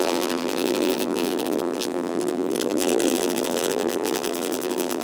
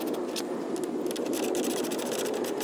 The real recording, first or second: second